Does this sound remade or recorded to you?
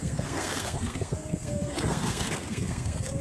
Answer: remade